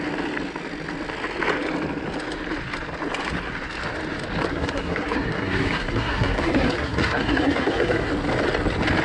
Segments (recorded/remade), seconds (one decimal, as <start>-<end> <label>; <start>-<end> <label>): 0.0-4.5 recorded; 4.5-8.1 remade; 8.1-9.0 recorded